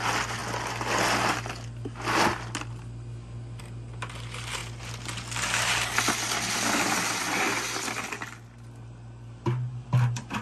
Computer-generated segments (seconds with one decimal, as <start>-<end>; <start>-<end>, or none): none